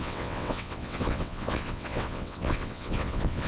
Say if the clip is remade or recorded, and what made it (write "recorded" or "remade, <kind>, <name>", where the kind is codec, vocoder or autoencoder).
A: remade, vocoder, WaveNeXt